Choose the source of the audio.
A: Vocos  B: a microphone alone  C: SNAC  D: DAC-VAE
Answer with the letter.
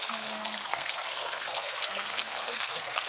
C